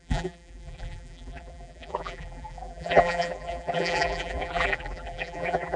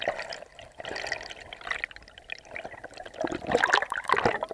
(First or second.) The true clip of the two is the second